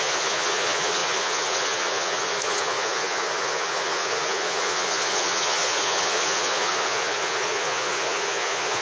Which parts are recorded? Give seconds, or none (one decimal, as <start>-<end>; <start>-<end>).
none